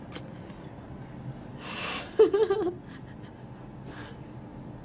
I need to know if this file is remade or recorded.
recorded